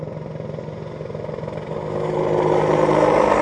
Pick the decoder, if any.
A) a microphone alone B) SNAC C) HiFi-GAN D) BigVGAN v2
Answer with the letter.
A